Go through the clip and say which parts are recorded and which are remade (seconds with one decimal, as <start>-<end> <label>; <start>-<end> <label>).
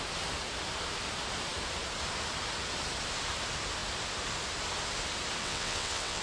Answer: 0.0-5.4 recorded; 5.4-6.2 remade